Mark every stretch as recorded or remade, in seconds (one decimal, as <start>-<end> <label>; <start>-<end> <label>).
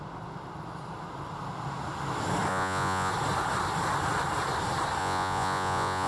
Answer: 0.0-2.5 recorded; 2.5-3.1 remade; 3.1-5.0 recorded; 5.0-6.1 remade